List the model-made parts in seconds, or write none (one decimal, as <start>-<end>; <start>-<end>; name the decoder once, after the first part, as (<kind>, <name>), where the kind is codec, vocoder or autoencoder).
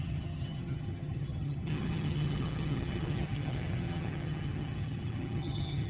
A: 0.0-5.9 (vocoder, HiFi-GAN)